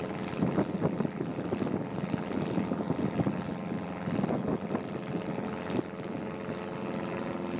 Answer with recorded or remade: recorded